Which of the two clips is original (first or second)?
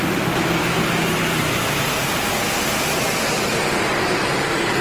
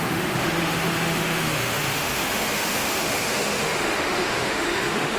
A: first